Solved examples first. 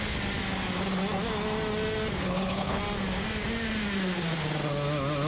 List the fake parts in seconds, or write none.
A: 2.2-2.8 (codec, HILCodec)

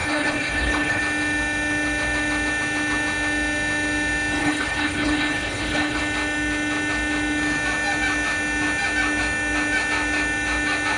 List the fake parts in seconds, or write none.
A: 0.0-1.0 (codec, HILCodec); 4.4-6.0

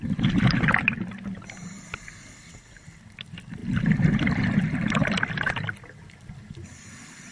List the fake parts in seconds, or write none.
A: none

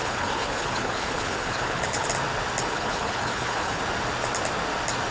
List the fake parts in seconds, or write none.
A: 0.0-2.1 (codec, HILCodec); 2.7-3.8

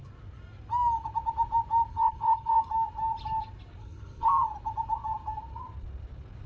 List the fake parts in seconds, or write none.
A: 1.9-2.6 (codec, HILCodec); 3.8-4.3

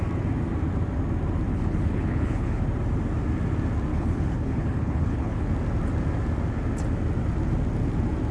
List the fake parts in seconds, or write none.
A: 1.5-2.6 (codec, HILCodec); 3.9-5.5

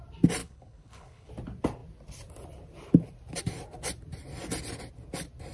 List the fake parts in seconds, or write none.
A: 0.4-1.3 (codec, HILCodec)

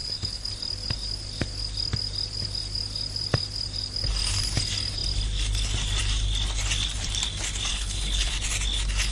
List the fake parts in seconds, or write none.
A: 0.0-0.5 (codec, HILCodec); 7.7-8.3